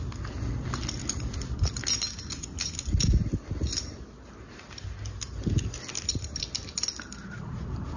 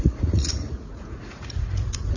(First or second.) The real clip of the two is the first